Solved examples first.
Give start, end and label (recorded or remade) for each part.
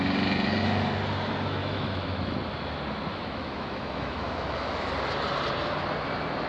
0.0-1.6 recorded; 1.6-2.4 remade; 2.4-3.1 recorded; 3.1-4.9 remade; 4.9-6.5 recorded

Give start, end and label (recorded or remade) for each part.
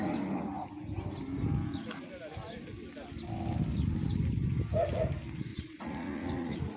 0.0-5.5 recorded; 5.5-6.8 remade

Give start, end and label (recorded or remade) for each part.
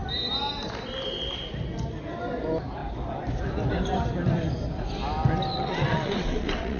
0.0-5.5 recorded; 5.5-6.8 remade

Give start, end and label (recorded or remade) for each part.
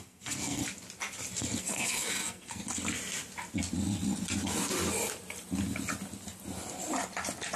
0.0-0.6 remade; 0.6-1.6 recorded; 1.6-2.6 remade; 2.6-7.6 recorded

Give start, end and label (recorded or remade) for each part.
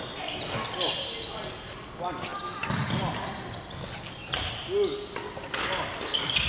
0.0-6.5 recorded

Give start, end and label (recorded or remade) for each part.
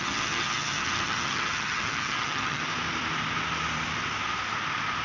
0.0-2.6 remade; 2.6-5.0 recorded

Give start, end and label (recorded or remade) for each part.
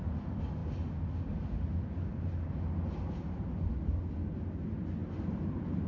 0.0-5.9 recorded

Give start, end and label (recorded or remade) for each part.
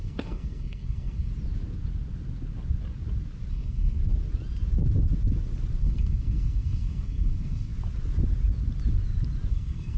0.0-1.3 remade; 1.3-3.5 recorded; 3.5-4.0 remade; 4.0-5.8 recorded; 5.8-7.7 remade; 7.7-9.5 recorded; 9.5-10.0 remade